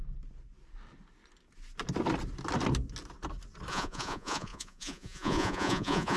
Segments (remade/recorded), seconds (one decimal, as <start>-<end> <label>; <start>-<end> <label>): 0.0-3.7 recorded; 3.7-6.2 remade

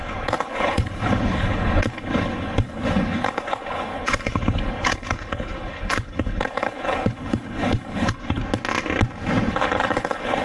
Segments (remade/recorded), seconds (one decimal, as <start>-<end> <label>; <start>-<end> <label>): 0.0-8.4 remade; 8.4-9.5 recorded; 9.5-10.4 remade

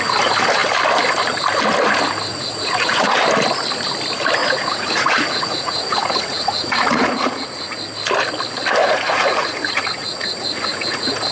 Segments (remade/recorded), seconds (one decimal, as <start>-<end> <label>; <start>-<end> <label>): 0.0-2.3 recorded; 2.3-3.2 remade; 3.2-4.4 recorded; 4.4-7.8 remade; 7.8-8.8 recorded; 8.8-11.3 remade

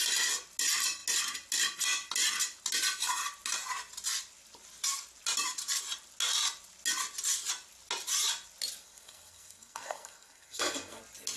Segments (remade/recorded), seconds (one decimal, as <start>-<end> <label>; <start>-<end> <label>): 0.0-8.8 recorded; 8.8-11.0 remade; 11.0-11.4 recorded

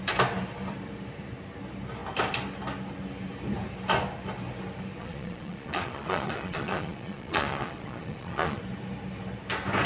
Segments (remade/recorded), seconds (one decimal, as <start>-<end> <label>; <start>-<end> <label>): 0.0-5.0 recorded; 5.0-8.6 remade; 8.6-9.9 recorded

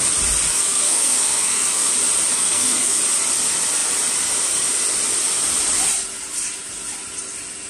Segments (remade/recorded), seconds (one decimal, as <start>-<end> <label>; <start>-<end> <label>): 0.0-0.5 recorded; 0.5-1.9 remade; 1.9-2.3 recorded; 2.3-3.0 remade; 3.0-7.7 recorded

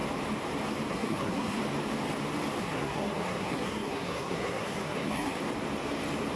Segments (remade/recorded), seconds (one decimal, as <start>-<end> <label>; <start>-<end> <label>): 0.0-0.9 recorded; 0.9-1.6 remade; 1.6-2.6 recorded; 2.6-5.4 remade; 5.4-6.4 recorded

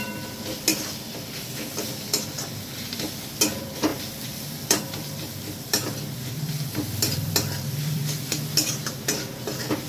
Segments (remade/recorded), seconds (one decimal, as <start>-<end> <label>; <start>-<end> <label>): 0.0-0.7 recorded; 0.7-2.6 remade; 2.6-3.9 recorded; 3.9-8.0 remade; 8.0-9.9 recorded